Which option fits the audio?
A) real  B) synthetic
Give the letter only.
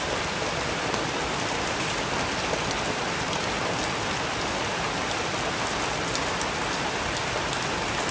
A